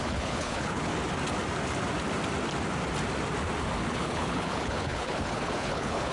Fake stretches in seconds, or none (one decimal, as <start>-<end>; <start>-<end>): 0.0-0.9; 3.9-6.1